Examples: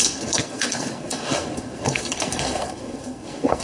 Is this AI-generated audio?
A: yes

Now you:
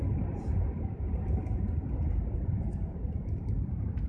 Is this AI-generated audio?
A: no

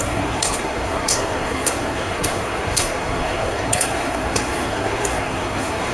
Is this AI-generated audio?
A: yes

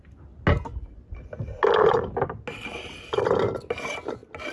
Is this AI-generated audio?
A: no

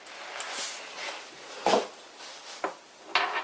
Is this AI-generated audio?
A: no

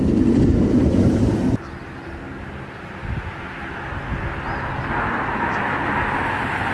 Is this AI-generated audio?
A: no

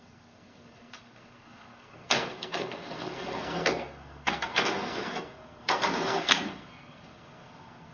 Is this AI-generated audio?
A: yes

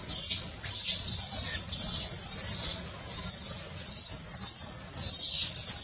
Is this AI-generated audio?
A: no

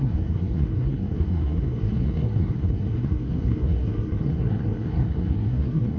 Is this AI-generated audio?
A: yes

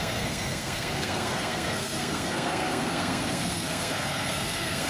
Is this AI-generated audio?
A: yes